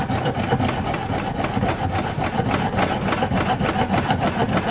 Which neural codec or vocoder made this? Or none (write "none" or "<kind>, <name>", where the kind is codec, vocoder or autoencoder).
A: none